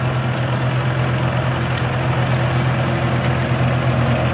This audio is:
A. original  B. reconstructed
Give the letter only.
A